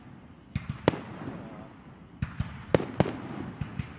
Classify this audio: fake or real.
real